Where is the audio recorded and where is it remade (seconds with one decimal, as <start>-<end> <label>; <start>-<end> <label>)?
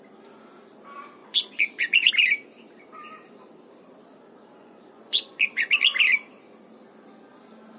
0.0-1.2 recorded; 1.2-2.1 remade; 2.1-4.6 recorded; 4.6-5.7 remade; 5.7-7.8 recorded